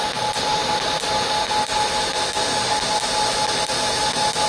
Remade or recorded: recorded